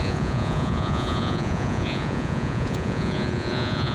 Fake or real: fake